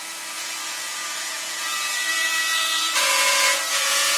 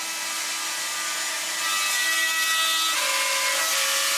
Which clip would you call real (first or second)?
second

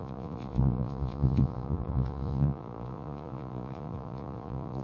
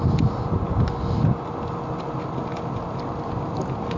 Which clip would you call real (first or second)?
second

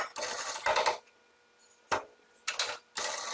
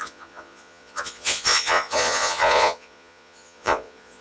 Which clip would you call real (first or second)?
first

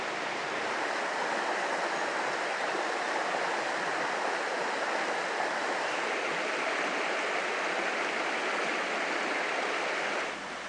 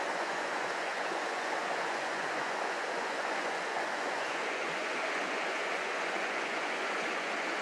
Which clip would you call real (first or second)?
first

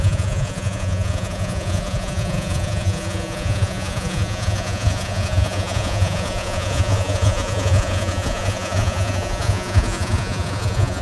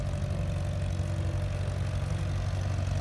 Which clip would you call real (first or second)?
second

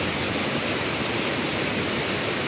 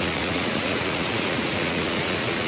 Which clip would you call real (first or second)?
first